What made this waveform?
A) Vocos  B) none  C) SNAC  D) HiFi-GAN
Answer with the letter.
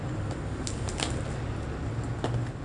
B